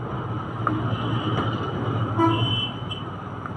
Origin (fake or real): real